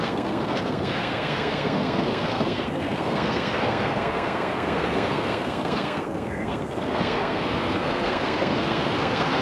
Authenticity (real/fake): fake